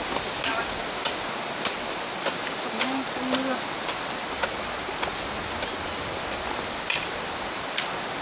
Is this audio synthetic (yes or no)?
no